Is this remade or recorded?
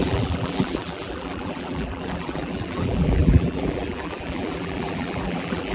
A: remade